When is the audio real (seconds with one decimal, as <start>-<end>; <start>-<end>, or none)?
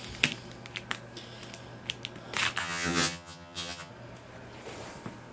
0.0-2.6; 3.9-5.3